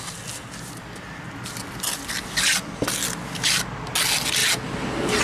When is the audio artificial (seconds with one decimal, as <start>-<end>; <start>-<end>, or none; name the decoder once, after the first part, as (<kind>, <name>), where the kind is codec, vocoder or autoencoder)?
none